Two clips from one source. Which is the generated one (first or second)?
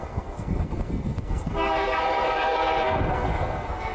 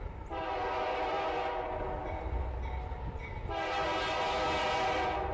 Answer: first